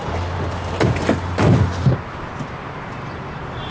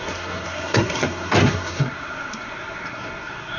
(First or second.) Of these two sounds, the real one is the first